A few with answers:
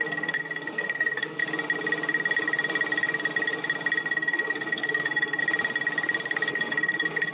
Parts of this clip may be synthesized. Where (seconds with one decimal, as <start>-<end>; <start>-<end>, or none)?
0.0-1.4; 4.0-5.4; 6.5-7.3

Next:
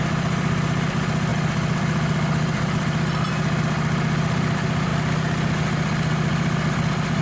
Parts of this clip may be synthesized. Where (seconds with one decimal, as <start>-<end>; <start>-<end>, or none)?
none

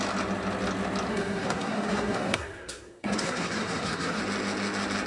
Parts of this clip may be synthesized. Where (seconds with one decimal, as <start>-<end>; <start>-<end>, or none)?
1.1-4.2

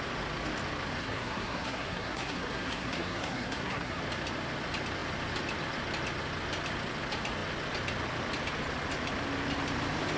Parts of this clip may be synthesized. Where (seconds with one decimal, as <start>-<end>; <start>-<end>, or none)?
1.0-4.0

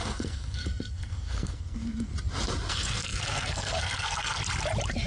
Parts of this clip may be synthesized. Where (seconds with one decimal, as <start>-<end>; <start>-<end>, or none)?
0.0-2.1; 2.7-4.4

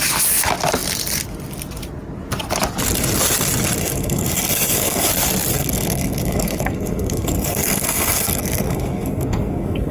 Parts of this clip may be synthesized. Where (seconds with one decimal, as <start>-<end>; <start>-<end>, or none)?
3.8-5.1; 5.5-9.9

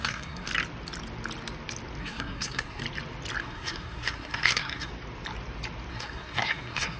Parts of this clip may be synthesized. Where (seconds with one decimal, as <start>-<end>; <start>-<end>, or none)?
0.0-0.5; 2.0-2.8; 3.4-4.9; 5.9-7.0